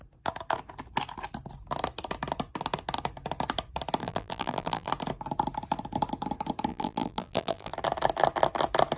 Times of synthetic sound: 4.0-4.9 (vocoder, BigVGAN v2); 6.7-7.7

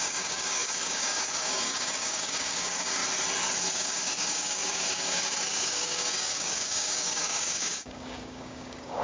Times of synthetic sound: 0.0-3.0 (codec, DAC); 3.7-9.0

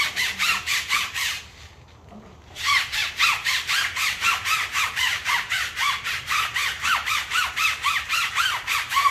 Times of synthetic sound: 0.0-9.1 (vocoder, BigVGAN v2)

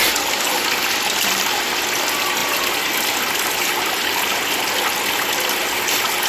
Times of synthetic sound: none

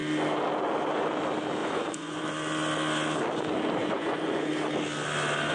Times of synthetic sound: 1.6-2.2 (vocoder, Vocos); 3.8-4.5